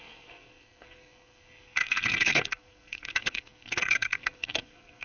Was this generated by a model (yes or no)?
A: yes